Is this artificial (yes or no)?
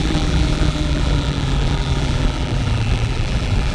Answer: yes